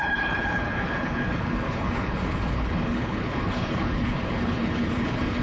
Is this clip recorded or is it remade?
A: remade